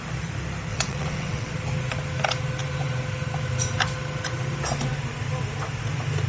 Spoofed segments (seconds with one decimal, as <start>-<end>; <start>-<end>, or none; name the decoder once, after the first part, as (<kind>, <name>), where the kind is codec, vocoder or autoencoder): 0.7-1.5 (vocoder, WaveNeXt)